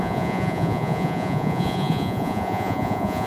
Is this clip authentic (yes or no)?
no